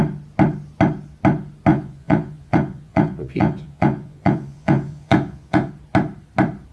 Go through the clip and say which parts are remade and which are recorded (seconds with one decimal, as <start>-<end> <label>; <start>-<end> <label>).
0.0-1.7 recorded; 1.7-5.7 remade; 5.7-6.7 recorded